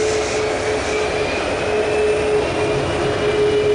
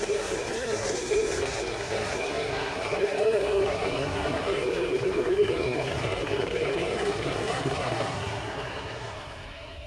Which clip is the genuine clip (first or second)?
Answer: first